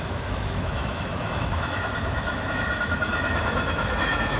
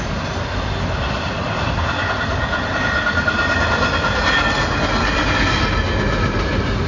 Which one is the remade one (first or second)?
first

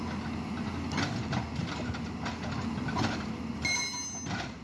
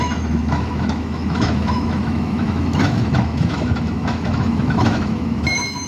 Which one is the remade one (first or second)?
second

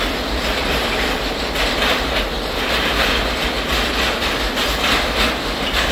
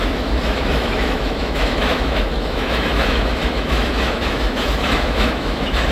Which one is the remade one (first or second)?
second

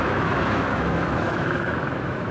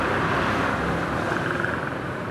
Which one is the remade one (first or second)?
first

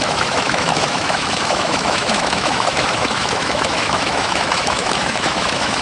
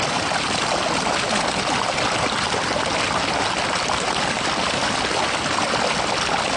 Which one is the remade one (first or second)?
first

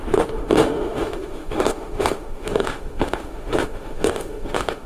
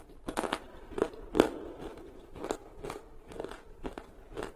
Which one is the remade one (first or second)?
first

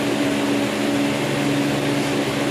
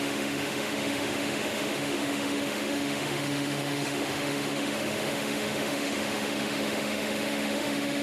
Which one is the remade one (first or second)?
second